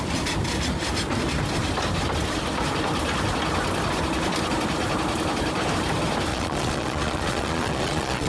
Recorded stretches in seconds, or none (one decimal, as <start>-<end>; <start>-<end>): 0.0-6.3